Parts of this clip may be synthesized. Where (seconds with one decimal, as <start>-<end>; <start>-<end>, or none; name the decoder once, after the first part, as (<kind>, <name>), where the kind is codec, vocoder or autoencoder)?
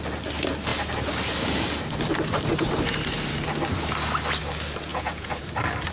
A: 4.9-5.4 (vocoder, Vocos)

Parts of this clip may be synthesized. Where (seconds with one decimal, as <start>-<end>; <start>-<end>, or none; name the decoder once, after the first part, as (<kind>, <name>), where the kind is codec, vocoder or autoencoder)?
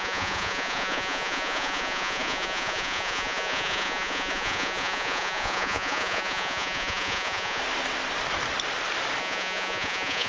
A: 0.0-7.6 (vocoder, Vocos); 9.2-10.3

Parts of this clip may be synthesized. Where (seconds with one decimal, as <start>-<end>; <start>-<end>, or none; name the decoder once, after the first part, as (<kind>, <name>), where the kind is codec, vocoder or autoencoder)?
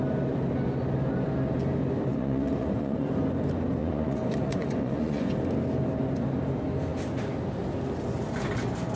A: 2.1-3.1 (vocoder, Vocos); 3.8-5.3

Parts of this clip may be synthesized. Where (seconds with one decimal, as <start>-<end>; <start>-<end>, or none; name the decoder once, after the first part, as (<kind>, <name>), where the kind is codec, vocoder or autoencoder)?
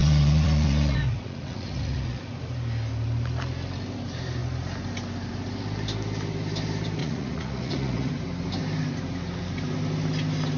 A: 0.0-2.2 (vocoder, Vocos); 7.0-8.1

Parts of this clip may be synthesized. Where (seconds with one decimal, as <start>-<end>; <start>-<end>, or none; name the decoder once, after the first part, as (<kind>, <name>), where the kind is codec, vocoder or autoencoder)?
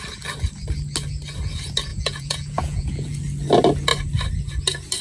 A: 1.9-3.2 (vocoder, Vocos)